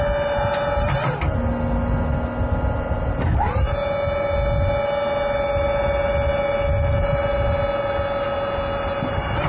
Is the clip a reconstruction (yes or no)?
no